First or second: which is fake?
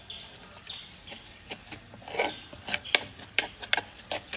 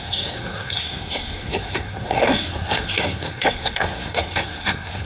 second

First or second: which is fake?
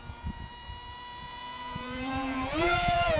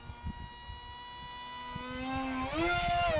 first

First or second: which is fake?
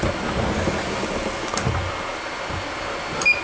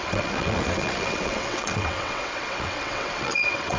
second